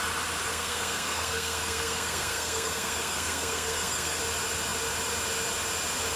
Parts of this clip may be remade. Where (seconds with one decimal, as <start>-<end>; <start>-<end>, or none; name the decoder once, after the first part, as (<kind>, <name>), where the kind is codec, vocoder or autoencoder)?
0.5-4.2 (codec, SNAC)